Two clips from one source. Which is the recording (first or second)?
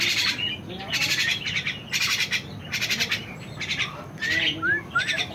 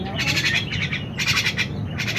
second